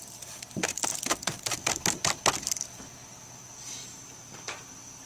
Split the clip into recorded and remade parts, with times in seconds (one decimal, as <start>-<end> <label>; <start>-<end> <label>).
0.0-5.1 recorded